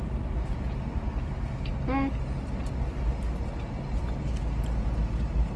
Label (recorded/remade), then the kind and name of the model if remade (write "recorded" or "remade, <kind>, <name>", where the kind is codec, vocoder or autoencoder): recorded